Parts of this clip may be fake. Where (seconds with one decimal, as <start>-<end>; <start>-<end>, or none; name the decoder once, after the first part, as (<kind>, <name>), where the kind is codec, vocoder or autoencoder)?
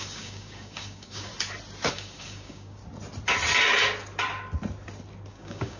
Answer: 0.0-1.3 (codec, DAC); 1.9-2.8; 5.3-5.8